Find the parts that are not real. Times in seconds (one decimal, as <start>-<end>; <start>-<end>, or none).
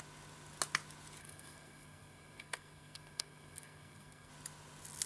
1.2-4.3